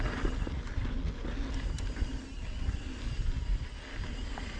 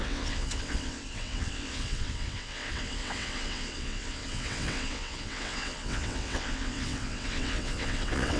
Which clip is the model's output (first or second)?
second